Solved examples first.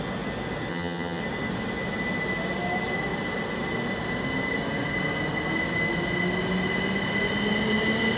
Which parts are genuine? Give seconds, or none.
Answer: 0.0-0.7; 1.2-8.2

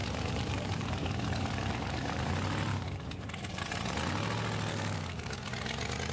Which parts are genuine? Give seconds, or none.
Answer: 2.3-2.7; 3.6-4.7; 5.5-6.1

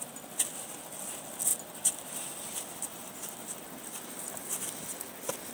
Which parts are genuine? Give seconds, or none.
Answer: 0.0-5.5

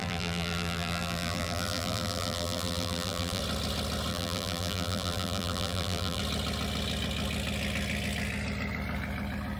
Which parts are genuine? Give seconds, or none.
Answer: 3.4-4.1; 6.2-9.6

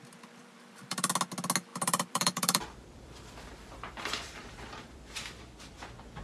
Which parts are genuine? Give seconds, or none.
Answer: 0.0-0.4; 1.1-1.7; 5.4-6.2

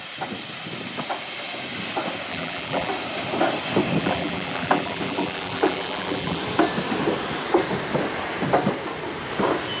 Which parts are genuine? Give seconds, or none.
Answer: 0.0-2.3; 2.9-4.0; 6.4-9.8

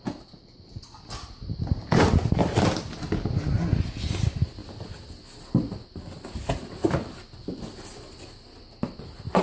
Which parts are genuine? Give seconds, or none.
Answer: 0.0-9.4